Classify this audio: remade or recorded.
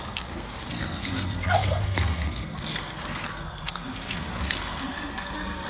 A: remade